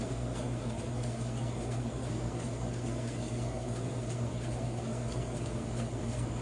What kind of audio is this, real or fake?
fake